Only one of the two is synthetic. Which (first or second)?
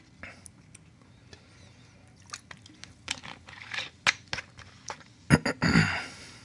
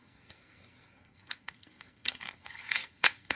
second